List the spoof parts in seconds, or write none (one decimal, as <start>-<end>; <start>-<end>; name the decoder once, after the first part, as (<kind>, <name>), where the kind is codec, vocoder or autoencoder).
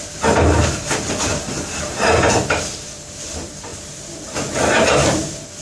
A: none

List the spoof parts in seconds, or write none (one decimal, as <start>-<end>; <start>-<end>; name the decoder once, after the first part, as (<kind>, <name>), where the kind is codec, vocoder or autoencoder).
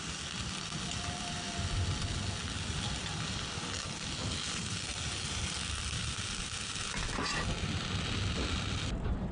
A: none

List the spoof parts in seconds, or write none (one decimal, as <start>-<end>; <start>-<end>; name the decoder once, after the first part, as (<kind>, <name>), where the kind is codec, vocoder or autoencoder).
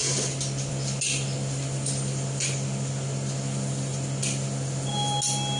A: none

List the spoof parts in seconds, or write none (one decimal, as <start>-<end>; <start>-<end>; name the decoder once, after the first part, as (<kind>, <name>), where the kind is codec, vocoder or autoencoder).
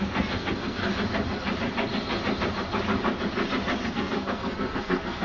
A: 0.0-0.8 (codec, SNAC); 3.9-5.2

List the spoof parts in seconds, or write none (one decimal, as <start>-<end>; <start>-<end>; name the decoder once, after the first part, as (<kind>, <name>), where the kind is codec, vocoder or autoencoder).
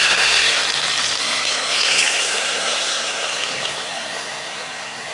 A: 0.0-0.6 (codec, SNAC); 1.2-5.1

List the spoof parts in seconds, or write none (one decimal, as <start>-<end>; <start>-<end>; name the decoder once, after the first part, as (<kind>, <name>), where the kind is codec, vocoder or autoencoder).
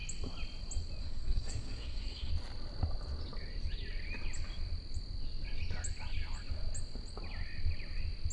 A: 1.0-2.3 (codec, SNAC)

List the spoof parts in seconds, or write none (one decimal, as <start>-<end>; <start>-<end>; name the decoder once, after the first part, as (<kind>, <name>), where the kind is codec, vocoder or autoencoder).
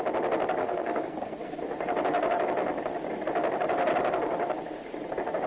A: 0.6-1.6 (codec, SNAC)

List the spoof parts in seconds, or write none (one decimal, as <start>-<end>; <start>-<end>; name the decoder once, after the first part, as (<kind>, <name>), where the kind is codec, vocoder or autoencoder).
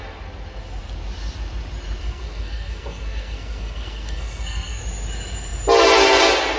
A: 2.0-4.8 (codec, SNAC)